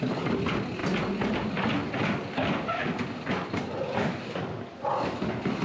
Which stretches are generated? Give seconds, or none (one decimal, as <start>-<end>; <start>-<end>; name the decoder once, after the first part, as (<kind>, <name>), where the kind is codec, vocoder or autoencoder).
none